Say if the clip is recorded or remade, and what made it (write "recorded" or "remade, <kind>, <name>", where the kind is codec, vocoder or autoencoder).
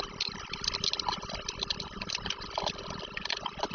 recorded